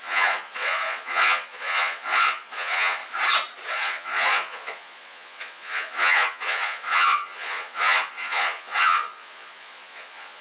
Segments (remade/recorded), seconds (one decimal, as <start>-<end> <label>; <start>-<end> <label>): 0.0-3.0 remade; 3.0-3.7 recorded; 3.7-10.4 remade